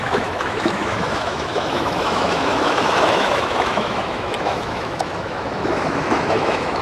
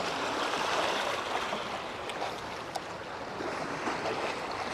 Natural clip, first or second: second